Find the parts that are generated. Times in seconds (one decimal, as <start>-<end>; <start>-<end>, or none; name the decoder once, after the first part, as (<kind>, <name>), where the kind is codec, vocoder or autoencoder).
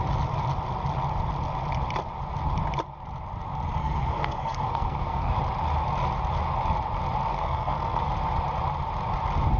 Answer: 3.8-5.3 (codec, SNAC); 7.3-8.0